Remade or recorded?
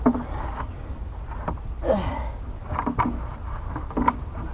recorded